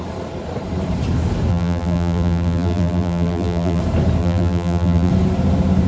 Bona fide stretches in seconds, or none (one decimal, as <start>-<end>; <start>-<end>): 0.0-1.5; 3.8-4.2; 5.1-5.9